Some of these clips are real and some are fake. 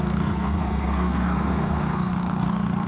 fake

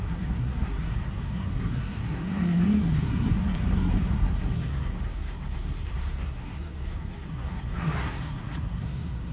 fake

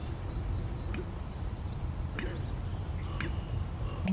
real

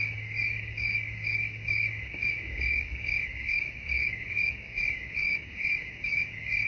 fake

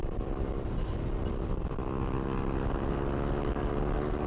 real